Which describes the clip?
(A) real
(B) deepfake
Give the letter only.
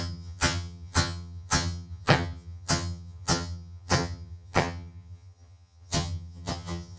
B